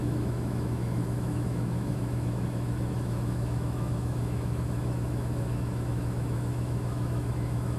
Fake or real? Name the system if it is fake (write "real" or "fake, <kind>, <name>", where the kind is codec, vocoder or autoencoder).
fake, autoencoder, DAC-VAE